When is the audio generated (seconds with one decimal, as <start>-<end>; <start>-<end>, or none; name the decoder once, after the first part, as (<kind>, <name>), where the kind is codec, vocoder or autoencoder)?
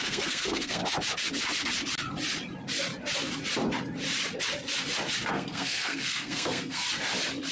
0.0-0.8 (codec, SNAC); 5.3-6.8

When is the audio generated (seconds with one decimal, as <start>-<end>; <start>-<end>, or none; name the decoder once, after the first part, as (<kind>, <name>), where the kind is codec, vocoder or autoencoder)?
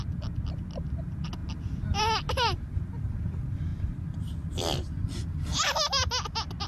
none